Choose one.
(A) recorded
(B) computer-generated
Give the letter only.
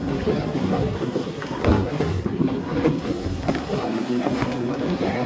B